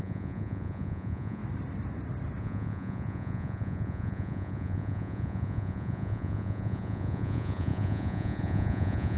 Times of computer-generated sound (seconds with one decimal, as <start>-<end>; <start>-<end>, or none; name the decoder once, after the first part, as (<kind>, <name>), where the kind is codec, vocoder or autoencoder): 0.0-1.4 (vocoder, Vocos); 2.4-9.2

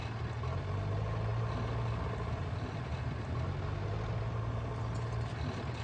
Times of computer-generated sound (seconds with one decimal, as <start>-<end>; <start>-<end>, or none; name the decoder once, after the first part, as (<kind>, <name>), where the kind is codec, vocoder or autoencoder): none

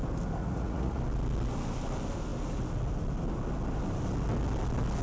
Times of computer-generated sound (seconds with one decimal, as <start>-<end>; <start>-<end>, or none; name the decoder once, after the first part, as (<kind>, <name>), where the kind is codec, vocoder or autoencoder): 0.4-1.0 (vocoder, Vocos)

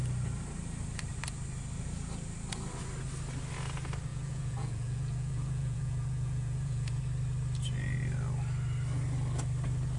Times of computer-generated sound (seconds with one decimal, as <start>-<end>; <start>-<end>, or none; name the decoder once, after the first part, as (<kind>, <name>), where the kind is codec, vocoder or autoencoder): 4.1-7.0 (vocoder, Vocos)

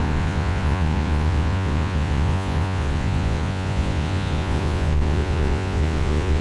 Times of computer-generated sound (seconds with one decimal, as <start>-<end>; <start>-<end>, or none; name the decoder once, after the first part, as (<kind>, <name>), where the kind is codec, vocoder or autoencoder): 0.0-6.4 (vocoder, Vocos)

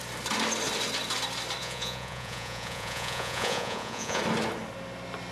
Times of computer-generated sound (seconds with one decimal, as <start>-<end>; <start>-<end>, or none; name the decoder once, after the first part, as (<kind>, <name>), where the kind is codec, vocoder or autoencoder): 1.6-4.2 (vocoder, Vocos)

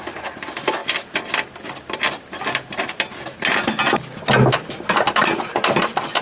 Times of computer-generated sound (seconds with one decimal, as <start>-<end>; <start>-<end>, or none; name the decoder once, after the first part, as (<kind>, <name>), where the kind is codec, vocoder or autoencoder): none